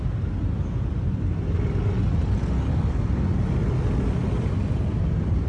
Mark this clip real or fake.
real